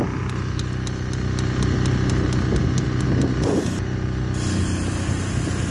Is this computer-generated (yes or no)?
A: no